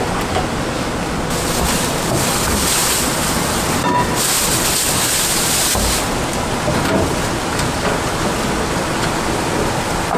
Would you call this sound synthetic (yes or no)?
no